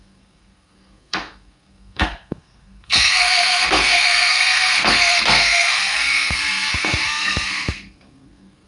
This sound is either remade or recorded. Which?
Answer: remade